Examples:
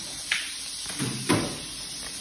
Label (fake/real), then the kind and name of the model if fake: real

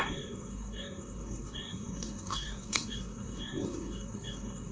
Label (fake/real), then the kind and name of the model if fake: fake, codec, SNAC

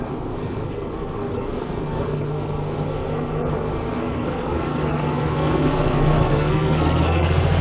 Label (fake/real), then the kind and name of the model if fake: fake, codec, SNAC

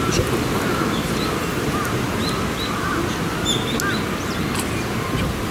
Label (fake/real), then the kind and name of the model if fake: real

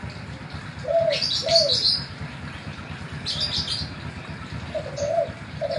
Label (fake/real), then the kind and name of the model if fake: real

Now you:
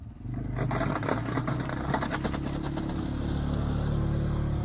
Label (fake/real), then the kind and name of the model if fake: real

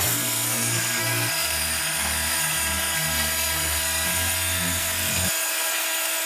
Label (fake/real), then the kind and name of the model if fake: fake, codec, SNAC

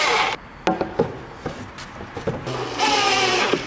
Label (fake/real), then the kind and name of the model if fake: real